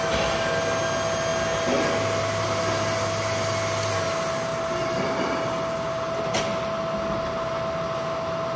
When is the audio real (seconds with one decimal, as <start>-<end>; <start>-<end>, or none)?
0.0-8.6